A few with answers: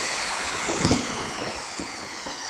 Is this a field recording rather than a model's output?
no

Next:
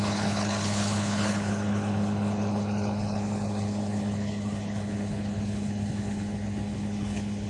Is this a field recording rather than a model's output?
no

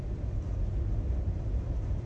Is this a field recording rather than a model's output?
yes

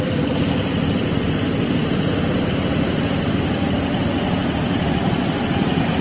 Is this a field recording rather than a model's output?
yes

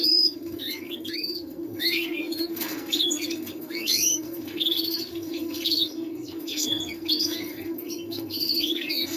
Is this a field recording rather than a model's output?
no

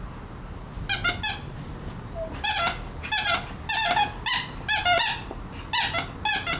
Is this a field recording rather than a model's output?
yes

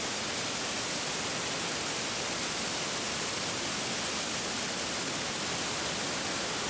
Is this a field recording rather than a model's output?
yes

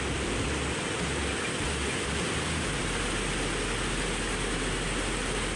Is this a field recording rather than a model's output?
yes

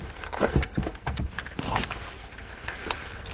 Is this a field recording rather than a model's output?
no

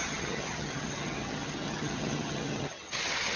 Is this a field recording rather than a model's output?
no